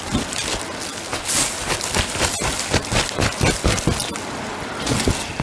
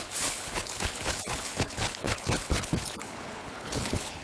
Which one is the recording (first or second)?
first